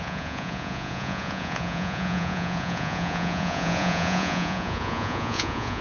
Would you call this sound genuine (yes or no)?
no